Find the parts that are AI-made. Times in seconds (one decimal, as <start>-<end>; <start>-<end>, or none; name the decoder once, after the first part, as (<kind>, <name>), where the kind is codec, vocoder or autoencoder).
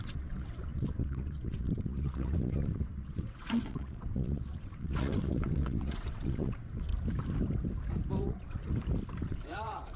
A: 0.0-6.9 (vocoder, WaveNeXt); 8.2-8.6; 9.3-10.0